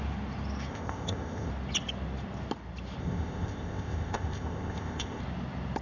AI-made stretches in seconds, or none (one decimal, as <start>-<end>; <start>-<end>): 0.7-1.5; 3.0-5.2